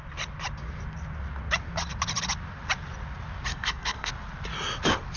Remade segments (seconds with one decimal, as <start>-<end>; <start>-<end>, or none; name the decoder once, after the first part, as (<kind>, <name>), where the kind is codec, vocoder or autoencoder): 3.5-4.1 (codec, SNAC)